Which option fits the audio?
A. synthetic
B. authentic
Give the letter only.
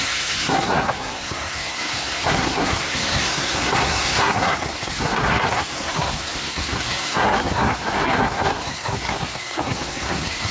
A